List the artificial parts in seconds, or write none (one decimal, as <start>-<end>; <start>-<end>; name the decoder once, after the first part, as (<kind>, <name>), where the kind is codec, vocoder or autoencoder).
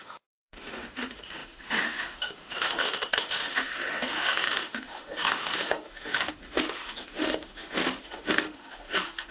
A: 0.0-9.3 (autoencoder, DAC-VAE)